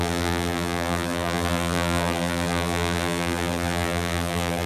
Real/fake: fake